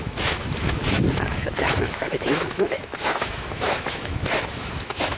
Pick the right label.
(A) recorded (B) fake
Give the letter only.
B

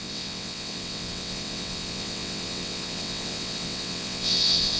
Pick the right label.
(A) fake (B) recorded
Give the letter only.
A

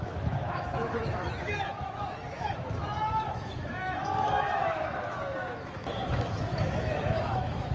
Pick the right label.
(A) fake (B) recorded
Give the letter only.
A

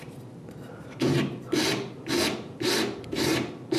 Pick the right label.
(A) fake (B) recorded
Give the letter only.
B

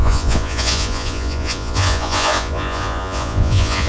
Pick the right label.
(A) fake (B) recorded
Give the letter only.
A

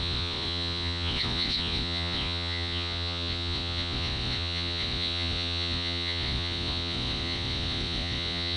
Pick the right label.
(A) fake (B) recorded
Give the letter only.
A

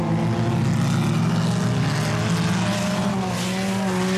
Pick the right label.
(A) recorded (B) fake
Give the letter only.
A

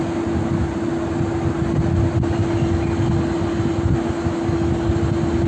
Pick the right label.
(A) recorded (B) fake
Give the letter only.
A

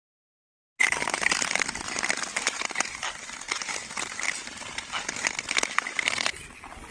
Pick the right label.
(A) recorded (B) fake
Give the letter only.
A